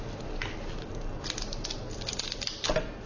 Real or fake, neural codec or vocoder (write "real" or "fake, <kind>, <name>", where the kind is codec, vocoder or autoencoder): real